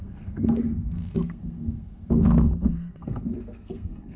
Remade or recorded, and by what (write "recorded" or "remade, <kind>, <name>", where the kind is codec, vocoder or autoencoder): remade, codec, SNAC